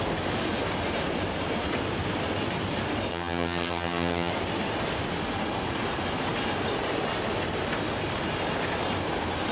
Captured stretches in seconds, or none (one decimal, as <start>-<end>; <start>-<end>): 0.0-3.1; 4.3-9.5